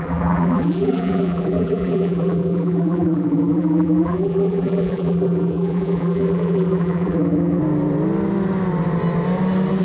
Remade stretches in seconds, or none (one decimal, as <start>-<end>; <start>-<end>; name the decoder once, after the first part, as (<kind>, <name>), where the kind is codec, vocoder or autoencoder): 0.0-7.6 (vocoder, BigVGAN v2)